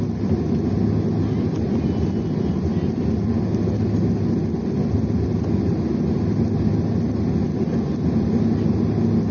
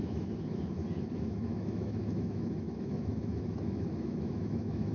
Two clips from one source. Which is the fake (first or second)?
second